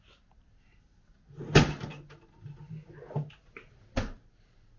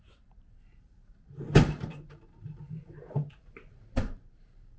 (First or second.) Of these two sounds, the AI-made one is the second